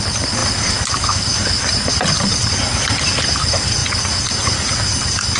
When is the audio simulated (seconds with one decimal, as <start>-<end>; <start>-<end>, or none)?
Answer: none